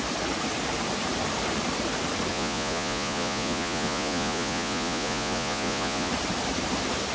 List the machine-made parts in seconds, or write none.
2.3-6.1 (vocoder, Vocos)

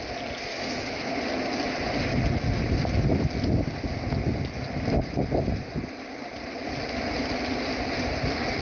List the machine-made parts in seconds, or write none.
0.5-1.2 (autoencoder, DAC-VAE)

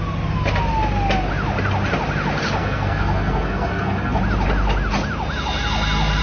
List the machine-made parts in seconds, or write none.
2.6-4.2 (codec, SNAC)

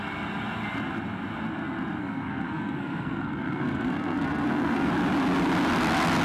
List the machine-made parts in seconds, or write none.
2.0-4.9 (codec, SNAC)

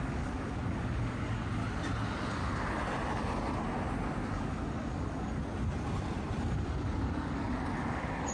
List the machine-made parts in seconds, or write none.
0.0-1.6 (codec, DAC); 2.3-2.8; 4.3-5.4; 6.4-8.3

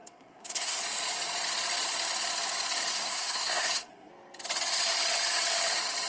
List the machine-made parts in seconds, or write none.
0.0-0.8 (codec, SNAC); 2.9-4.1